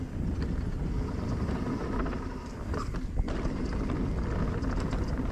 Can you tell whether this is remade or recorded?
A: recorded